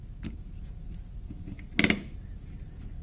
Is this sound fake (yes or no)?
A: no